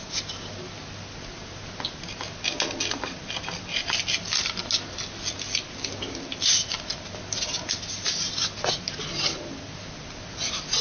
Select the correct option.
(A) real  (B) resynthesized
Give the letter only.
A